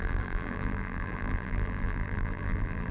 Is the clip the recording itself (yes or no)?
no